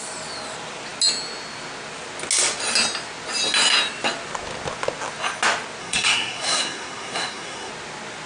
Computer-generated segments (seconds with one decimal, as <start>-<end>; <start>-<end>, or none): 5.8-7.7